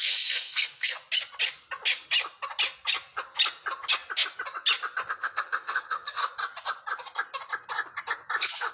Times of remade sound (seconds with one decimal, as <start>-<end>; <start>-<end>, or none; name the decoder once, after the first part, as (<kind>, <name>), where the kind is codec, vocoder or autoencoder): 0.0-1.0 (codec, SNAC); 5.1-6.2